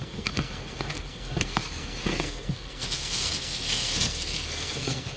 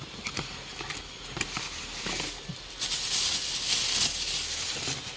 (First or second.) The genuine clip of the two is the second